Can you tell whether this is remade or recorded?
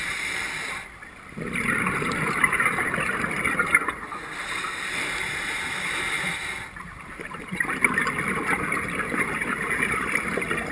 recorded